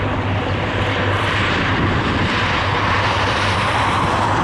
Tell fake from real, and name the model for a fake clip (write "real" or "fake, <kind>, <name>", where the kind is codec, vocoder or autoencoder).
fake, vocoder, BigVGAN v2